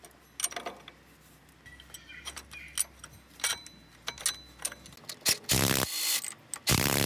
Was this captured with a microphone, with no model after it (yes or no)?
yes